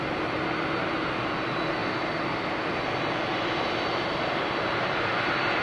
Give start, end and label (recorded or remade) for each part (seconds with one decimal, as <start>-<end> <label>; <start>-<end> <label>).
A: 0.0-5.6 recorded